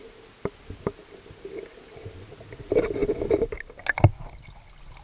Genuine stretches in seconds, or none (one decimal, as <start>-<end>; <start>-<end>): 0.0-5.0